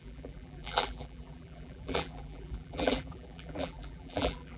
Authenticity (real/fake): fake